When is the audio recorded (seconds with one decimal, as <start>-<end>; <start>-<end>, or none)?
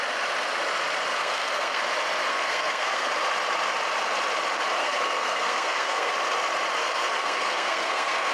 0.0-1.2; 1.8-2.3; 3.1-4.8; 6.1-6.8